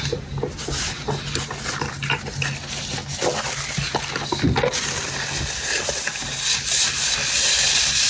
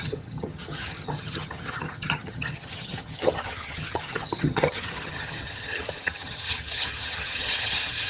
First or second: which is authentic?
first